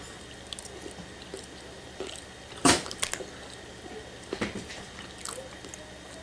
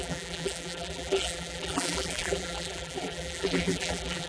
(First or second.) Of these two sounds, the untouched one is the first